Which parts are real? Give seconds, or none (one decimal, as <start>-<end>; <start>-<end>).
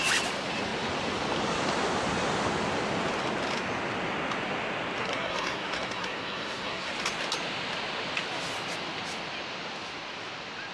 0.0-5.0; 6.9-10.7